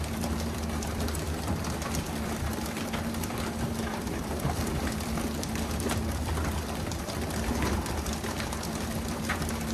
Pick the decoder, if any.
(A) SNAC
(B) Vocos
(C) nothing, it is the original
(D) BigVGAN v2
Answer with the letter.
D